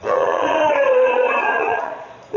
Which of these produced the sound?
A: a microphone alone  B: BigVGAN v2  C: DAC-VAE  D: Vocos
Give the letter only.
D